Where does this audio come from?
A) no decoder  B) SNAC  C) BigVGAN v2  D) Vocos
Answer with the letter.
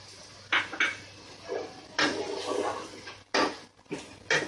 A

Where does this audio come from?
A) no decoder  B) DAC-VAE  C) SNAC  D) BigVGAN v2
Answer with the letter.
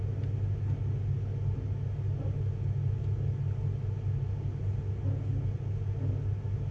A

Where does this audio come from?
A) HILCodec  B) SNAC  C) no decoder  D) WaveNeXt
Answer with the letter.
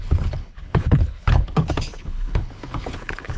A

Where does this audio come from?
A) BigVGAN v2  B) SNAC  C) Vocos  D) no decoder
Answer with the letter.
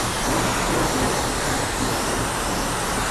D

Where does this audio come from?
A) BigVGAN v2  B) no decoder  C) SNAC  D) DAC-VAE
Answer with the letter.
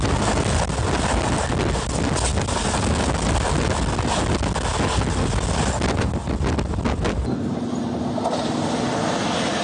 B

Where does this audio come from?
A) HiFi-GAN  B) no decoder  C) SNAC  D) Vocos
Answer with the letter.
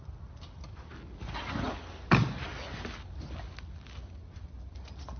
B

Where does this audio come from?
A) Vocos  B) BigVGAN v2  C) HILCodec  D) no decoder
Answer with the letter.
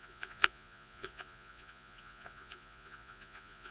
A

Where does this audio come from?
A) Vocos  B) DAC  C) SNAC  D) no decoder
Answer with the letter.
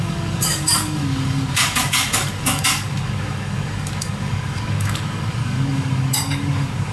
B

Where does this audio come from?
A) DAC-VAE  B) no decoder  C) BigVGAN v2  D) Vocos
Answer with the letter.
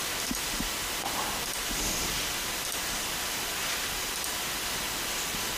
B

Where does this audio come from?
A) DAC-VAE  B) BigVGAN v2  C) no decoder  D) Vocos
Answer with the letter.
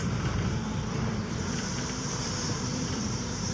B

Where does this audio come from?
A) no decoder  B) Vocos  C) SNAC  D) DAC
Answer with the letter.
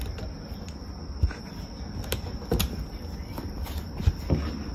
A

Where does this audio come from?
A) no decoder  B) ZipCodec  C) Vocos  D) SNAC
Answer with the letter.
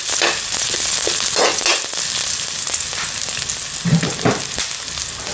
A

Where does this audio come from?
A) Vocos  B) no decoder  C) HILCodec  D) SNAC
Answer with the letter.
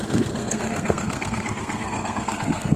D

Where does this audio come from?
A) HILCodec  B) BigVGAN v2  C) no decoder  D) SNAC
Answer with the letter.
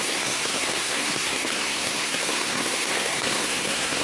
D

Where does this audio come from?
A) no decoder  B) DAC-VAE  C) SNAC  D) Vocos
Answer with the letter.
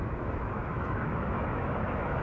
B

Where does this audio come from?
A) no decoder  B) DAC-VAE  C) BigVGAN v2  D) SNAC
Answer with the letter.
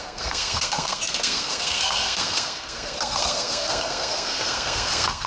D